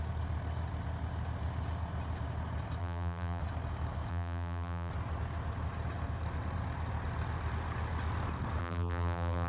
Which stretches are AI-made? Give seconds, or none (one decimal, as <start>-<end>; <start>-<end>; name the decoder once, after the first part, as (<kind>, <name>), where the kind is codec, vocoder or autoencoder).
2.8-3.4 (vocoder, BigVGAN v2); 4.1-4.9; 8.6-9.5